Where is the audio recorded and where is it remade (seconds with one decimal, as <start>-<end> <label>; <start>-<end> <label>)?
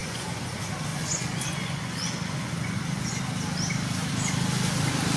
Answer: 0.0-0.5 remade; 0.5-0.9 recorded; 0.9-3.2 remade; 3.2-5.2 recorded